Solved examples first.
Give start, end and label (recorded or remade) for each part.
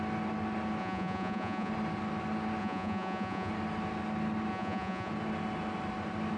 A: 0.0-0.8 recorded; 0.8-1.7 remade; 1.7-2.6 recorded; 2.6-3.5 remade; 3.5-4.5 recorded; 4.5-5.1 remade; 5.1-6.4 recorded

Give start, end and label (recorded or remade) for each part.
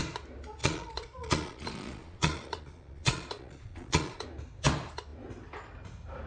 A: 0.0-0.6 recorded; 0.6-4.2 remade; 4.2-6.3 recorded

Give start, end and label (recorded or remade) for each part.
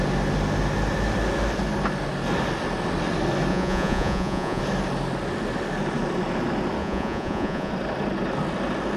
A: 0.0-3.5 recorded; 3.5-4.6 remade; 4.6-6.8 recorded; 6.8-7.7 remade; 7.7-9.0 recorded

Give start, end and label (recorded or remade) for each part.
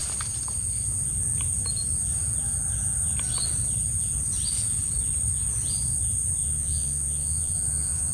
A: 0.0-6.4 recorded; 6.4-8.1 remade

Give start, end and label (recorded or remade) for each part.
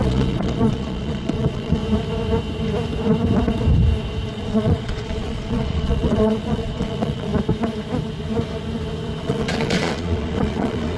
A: 0.0-1.8 remade; 1.8-4.3 recorded; 4.3-7.3 remade; 7.3-9.2 recorded; 9.2-11.0 remade